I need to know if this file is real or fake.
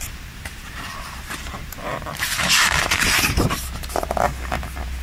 fake